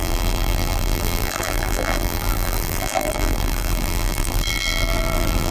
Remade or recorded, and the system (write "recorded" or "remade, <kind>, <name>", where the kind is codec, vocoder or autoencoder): remade, vocoder, BigVGAN v2